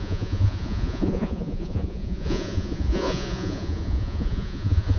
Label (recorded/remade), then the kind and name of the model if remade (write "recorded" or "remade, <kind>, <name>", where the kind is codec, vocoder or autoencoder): remade, vocoder, Vocos